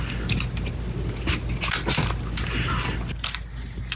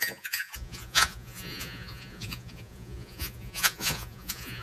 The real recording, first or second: first